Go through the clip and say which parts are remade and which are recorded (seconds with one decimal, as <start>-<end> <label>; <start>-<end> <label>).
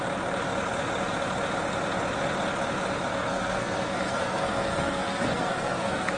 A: 0.0-3.1 recorded; 3.1-6.2 remade